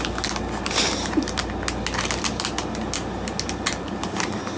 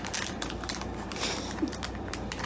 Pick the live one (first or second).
first